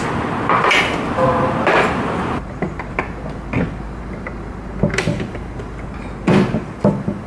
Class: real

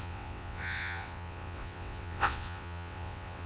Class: fake